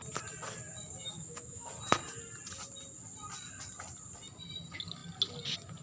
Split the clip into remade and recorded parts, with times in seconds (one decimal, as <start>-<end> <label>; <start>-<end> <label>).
0.0-1.0 recorded; 1.0-1.7 remade; 1.7-5.8 recorded